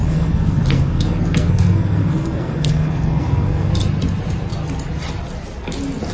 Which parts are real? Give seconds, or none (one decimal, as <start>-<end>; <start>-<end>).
3.7-6.1